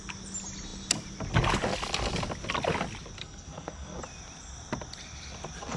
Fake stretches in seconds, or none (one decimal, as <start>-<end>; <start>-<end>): 3.2-4.0